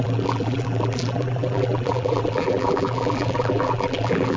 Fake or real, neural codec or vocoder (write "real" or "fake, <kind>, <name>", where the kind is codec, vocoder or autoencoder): fake, vocoder, BigVGAN v2